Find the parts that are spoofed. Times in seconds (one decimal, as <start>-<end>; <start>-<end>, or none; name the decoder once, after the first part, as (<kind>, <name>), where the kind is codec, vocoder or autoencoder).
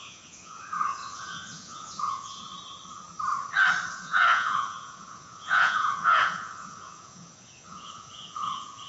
0.0-2.4 (vocoder, Vocos); 3.9-8.9